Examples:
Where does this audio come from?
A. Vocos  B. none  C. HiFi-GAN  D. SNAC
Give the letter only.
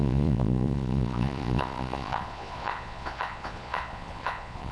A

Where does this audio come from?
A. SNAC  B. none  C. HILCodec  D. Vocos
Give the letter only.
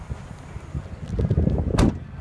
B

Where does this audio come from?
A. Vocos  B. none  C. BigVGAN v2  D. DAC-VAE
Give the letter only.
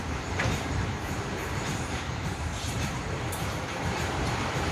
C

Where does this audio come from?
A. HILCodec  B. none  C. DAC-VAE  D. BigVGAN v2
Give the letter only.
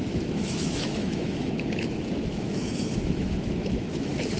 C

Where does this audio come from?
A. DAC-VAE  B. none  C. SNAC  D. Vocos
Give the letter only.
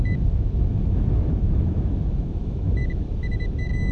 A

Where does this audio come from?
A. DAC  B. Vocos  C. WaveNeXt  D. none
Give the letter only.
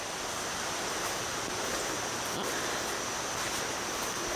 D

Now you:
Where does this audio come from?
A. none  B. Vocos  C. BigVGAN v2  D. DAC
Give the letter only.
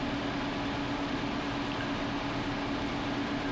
A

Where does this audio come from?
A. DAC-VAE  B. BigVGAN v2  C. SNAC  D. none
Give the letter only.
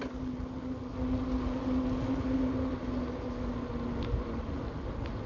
D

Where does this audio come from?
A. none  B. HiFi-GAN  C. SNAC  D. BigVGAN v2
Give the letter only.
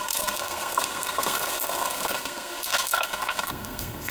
C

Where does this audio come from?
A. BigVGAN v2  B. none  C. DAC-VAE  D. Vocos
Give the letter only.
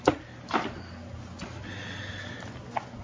B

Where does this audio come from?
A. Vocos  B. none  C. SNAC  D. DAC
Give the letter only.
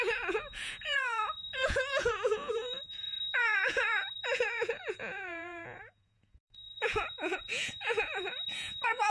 A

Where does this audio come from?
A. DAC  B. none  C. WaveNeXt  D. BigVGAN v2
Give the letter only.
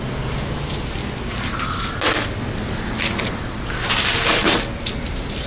B